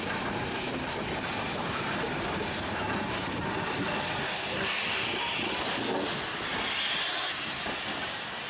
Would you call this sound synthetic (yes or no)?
no